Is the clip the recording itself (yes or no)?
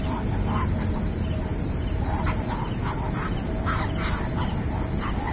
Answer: yes